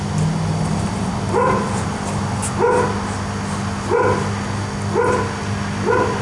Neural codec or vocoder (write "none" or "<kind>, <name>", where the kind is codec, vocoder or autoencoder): none